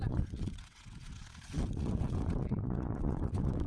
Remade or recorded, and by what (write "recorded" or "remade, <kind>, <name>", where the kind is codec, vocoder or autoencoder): remade, vocoder, WaveNeXt